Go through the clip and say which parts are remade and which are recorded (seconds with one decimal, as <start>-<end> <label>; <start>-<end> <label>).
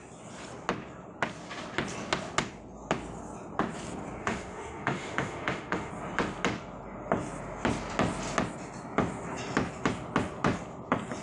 0.0-4.2 recorded; 4.2-5.9 remade; 5.9-11.2 recorded